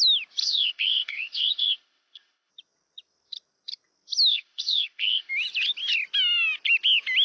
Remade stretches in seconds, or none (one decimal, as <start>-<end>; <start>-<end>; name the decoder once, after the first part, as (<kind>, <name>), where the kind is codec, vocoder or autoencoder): 0.4-2.5 (codec, ZipCodec); 4.3-5.3